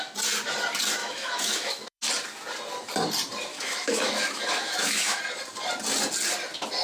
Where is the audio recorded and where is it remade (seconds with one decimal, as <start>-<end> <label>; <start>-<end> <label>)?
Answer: 0.0-1.0 recorded; 1.0-2.0 remade; 2.0-3.5 recorded; 3.5-5.2 remade; 5.2-6.8 recorded